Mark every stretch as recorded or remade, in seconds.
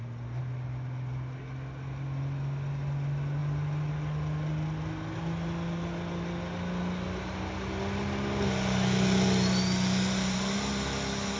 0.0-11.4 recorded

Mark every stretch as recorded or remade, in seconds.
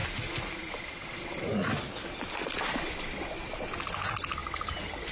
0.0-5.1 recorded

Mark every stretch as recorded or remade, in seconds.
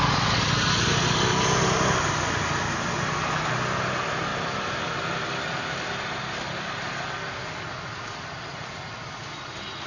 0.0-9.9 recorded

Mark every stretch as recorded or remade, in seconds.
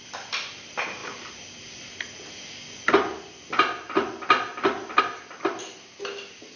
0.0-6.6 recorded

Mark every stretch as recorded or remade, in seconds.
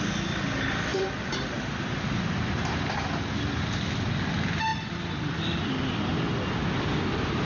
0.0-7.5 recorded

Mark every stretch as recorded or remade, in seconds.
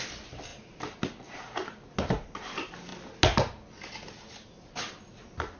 0.0-5.6 recorded